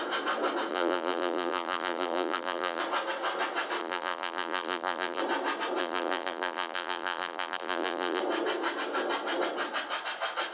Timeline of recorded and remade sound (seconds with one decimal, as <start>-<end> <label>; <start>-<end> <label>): 0.0-0.7 recorded; 0.7-2.8 remade; 2.8-3.8 recorded; 3.8-5.2 remade; 5.2-5.8 recorded; 5.8-8.2 remade; 8.2-10.5 recorded